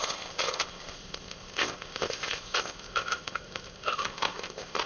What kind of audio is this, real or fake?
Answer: fake